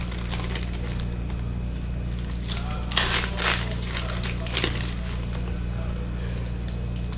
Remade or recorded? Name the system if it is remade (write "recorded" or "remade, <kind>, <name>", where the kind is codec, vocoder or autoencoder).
recorded